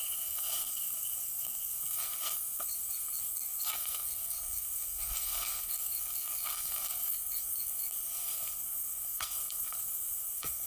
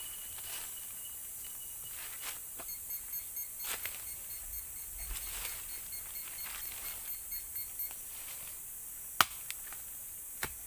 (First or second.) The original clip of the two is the second